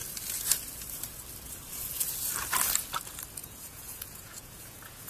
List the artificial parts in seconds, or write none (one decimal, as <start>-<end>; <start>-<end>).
3.4-5.1